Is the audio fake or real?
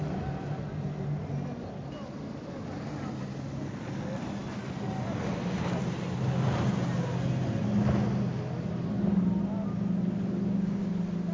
real